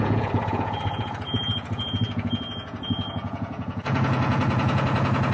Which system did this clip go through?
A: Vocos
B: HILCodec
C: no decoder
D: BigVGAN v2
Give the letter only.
A